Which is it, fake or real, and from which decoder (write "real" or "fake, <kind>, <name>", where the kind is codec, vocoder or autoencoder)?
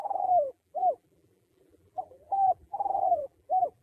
fake, vocoder, BigVGAN v2